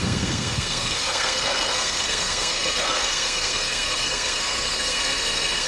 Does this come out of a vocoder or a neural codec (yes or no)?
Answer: yes